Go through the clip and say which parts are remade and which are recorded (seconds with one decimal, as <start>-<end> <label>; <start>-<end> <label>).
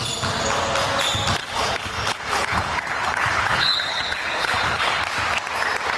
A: 0.0-1.4 recorded; 1.4-5.0 remade; 5.0-6.0 recorded